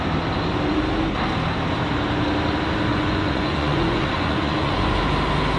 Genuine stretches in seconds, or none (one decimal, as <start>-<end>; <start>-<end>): 0.0-2.9; 5.0-5.6